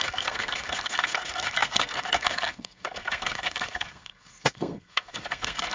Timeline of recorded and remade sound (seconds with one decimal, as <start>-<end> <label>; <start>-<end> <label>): 0.0-5.7 remade